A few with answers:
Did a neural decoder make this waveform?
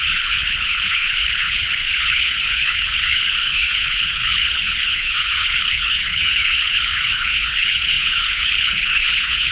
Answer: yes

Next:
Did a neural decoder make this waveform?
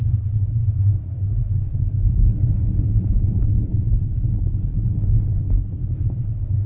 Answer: yes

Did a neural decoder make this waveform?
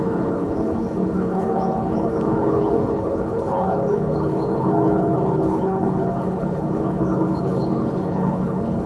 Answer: yes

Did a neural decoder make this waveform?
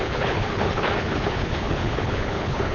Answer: yes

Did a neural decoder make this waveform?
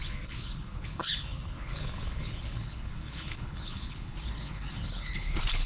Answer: yes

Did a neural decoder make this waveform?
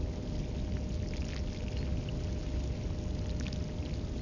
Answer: no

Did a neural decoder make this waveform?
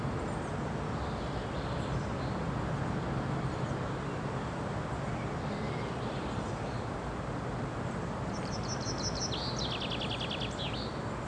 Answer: no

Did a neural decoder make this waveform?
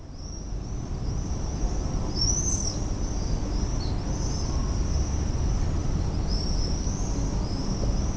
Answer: no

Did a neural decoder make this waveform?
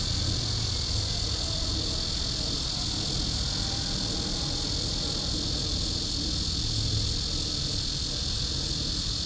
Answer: no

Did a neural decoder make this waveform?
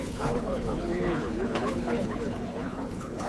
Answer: yes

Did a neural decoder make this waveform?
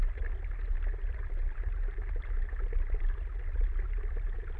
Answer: no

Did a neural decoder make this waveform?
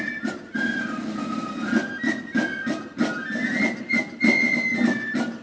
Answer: no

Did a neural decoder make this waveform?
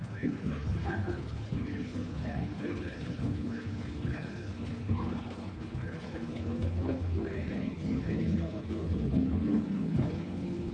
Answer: yes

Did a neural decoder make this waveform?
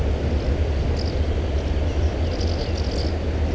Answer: no